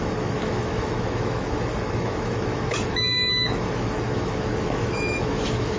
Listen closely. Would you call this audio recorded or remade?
remade